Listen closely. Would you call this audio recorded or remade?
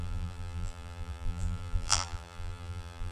remade